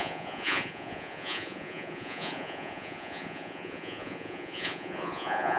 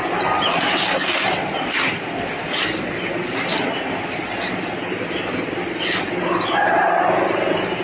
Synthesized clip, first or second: first